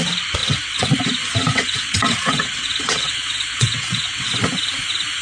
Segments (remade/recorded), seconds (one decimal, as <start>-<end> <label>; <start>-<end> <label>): 0.0-0.4 recorded; 0.4-1.0 remade; 1.0-1.5 recorded; 1.5-4.3 remade; 4.3-5.2 recorded